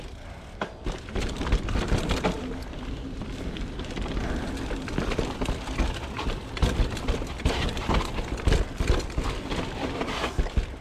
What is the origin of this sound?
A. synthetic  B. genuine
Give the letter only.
B